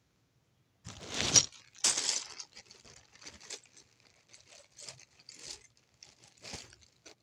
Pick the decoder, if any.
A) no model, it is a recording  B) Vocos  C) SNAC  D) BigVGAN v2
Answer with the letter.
A